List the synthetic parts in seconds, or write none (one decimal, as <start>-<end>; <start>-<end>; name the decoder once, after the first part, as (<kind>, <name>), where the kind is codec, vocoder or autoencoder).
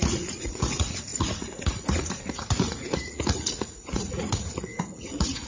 0.0-5.5 (vocoder, Vocos)